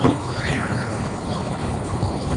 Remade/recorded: remade